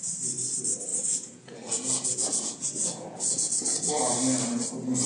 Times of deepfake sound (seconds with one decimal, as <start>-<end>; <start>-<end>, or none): 0.9-3.9